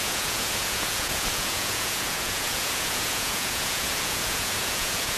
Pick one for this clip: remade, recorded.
remade